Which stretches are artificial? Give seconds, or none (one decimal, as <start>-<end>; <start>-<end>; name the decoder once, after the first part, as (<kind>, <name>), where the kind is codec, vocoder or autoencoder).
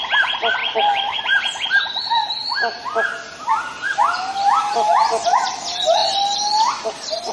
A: 0.6-1.2 (autoencoder, DAC-VAE)